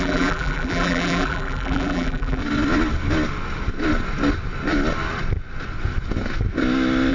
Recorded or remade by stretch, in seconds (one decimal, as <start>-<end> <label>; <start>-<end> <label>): 0.0-2.4 remade; 2.4-7.1 recorded